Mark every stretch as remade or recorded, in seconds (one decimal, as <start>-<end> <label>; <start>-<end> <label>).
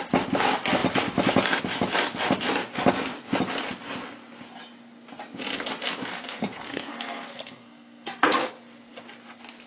0.0-6.1 recorded; 6.1-8.5 remade; 8.5-9.7 recorded